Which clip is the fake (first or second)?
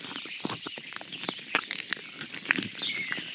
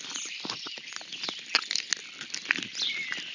first